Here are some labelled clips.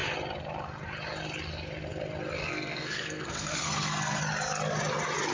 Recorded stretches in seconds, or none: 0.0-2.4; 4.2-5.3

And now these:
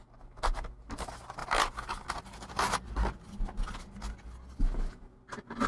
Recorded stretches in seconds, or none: 0.0-5.7